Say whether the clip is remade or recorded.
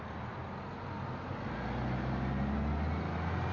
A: recorded